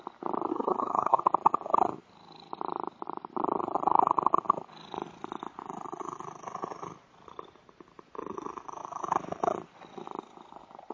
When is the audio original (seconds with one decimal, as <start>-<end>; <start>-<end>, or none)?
0.0-0.5; 1.2-10.9